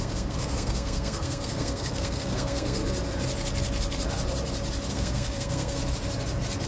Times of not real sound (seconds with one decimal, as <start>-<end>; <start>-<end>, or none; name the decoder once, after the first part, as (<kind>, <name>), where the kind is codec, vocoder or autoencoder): 0.0-2.8 (codec, SNAC); 4.9-5.8

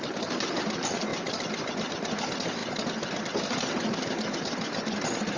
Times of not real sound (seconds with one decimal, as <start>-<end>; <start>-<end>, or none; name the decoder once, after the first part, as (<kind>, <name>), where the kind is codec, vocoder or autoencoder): none

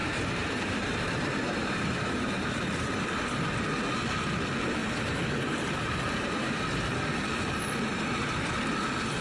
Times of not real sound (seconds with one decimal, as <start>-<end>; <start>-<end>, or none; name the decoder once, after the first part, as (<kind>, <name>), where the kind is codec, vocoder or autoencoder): 0.0-3.0 (vocoder, BigVGAN v2); 4.8-7.0

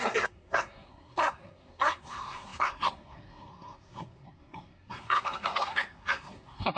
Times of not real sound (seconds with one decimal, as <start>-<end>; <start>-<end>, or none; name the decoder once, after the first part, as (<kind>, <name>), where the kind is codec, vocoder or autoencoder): 0.0-6.8 (codec, SNAC)

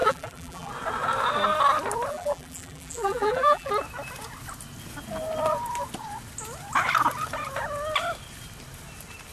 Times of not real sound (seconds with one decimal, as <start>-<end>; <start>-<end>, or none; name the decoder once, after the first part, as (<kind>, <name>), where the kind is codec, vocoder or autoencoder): 0.0-0.7 (vocoder, BigVGAN v2); 2.1-3.7